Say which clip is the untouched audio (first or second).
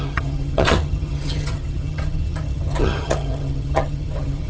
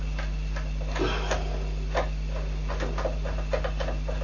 second